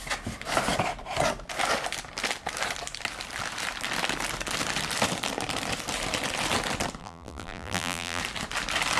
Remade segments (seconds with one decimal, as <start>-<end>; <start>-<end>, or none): 7.0-8.2